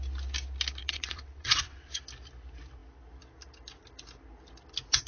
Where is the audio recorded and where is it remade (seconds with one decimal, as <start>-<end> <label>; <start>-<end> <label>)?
0.0-0.8 recorded; 0.8-2.0 remade; 2.0-5.1 recorded